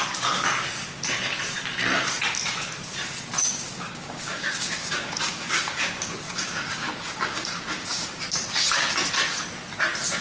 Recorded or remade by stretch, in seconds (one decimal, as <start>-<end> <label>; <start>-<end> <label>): 0.0-3.4 recorded; 3.4-8.2 remade; 8.2-10.2 recorded